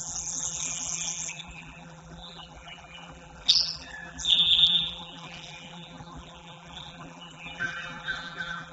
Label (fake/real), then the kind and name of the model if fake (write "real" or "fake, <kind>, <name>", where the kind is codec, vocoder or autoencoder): fake, vocoder, BigVGAN v2